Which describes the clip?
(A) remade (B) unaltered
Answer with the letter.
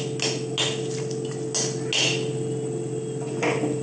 B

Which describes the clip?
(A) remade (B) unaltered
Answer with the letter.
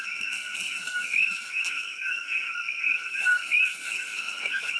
A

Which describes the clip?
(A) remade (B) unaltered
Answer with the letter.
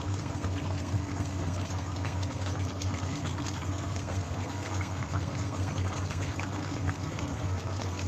A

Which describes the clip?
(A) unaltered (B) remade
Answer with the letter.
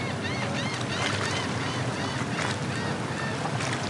A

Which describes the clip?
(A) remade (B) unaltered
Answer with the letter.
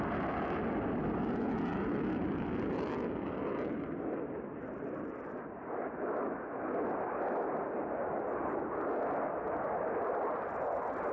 B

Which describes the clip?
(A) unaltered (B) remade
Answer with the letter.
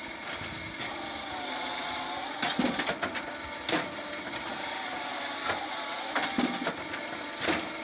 A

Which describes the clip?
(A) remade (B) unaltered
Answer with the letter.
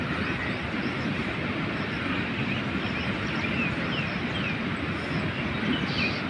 B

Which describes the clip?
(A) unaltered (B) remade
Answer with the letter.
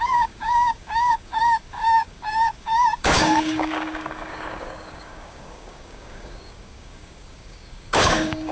B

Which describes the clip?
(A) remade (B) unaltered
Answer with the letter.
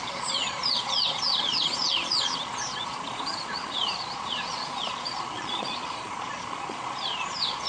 A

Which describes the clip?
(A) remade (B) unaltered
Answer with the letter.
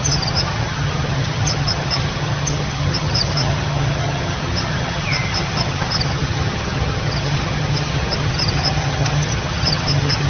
A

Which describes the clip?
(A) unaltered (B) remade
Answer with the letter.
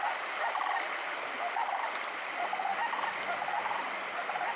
A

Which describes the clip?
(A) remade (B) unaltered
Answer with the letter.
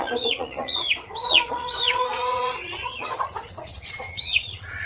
A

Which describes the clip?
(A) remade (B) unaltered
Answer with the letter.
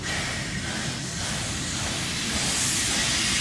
B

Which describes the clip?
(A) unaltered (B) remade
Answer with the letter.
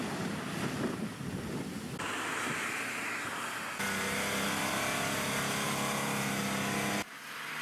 A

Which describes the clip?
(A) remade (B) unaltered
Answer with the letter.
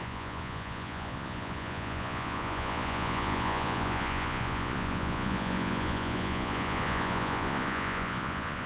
A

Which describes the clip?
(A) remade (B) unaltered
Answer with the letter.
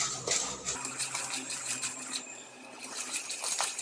A